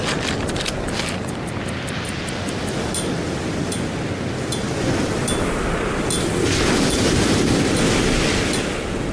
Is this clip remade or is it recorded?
recorded